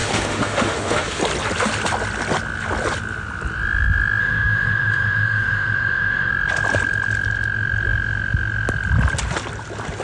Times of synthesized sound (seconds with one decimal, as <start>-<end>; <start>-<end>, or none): 0.0-1.2; 4.2-6.3